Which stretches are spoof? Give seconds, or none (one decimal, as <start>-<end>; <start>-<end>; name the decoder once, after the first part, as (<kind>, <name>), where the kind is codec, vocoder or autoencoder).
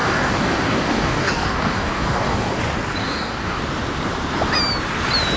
0.0-2.6 (codec, DAC); 3.0-3.6